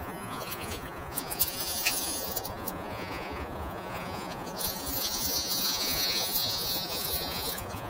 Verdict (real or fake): fake